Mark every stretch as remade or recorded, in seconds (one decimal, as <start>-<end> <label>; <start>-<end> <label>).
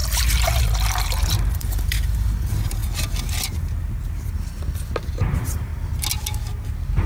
0.0-2.8 remade; 2.8-5.3 recorded; 5.3-5.7 remade; 5.7-7.1 recorded